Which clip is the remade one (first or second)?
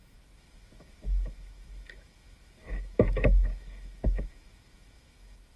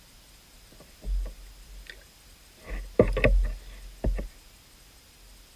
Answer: first